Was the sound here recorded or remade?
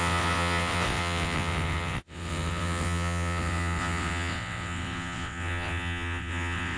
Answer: remade